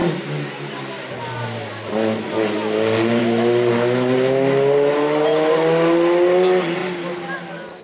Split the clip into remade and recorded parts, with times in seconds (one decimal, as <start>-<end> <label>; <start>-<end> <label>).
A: 0.0-7.8 recorded